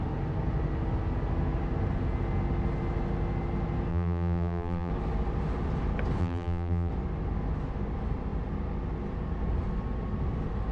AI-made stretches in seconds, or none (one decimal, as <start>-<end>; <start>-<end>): 3.9-4.9; 6.2-6.9